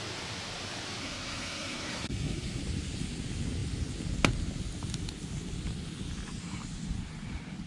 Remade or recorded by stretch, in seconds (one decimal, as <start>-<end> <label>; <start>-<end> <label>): 0.0-1.0 recorded; 1.0-2.6 remade; 2.6-7.7 recorded